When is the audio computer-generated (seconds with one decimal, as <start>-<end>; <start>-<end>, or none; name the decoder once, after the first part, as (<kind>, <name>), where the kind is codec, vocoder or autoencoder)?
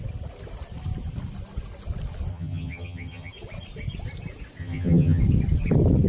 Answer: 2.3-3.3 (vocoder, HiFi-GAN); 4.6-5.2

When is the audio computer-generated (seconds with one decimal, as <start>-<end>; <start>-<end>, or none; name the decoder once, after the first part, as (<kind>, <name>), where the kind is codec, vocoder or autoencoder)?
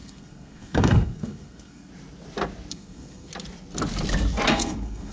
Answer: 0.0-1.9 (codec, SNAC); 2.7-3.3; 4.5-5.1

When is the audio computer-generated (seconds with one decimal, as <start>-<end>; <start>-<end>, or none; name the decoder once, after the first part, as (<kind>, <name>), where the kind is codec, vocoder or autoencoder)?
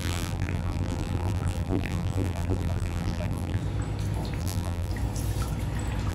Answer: 0.0-3.6 (vocoder, BigVGAN v2); 4.4-4.9